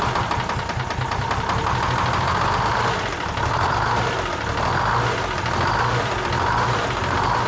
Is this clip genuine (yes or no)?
yes